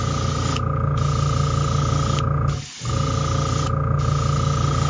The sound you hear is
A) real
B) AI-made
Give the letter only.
A